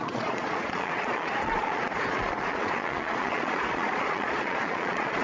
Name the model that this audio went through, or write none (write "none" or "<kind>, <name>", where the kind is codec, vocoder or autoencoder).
vocoder, Vocos